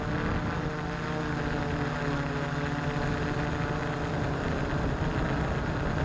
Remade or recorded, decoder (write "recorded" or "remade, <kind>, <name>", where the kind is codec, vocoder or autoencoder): recorded